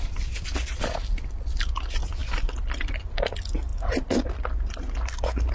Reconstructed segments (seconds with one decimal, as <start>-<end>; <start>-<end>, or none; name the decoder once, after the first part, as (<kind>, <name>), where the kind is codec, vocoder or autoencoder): none